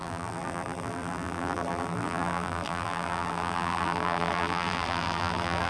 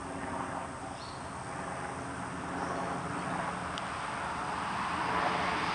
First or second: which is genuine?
second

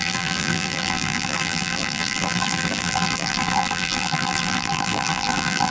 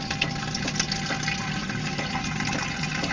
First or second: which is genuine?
second